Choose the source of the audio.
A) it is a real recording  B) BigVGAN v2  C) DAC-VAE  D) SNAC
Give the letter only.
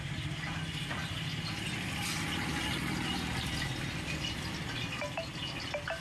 A